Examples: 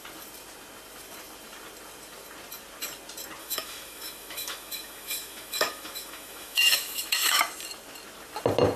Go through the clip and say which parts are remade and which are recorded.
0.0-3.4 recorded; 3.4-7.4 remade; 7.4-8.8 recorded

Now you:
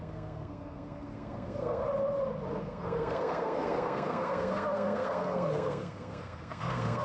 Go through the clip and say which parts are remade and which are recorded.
0.0-1.8 remade; 1.8-2.6 recorded; 2.6-7.0 remade

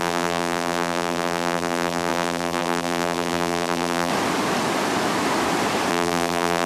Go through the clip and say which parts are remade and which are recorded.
0.0-4.1 remade; 4.1-5.9 recorded; 5.9-6.7 remade

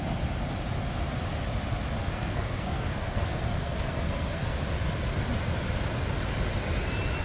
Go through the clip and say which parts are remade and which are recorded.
0.0-2.0 recorded; 2.0-4.6 remade; 4.6-7.2 recorded

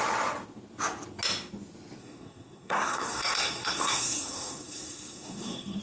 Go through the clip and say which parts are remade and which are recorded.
0.0-2.0 recorded; 2.0-5.8 remade

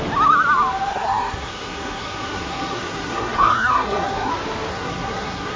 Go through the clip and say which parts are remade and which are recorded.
0.0-0.9 recorded; 0.9-4.3 remade; 4.3-4.7 recorded; 4.7-5.6 remade